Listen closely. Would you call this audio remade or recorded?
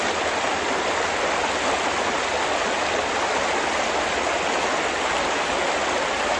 recorded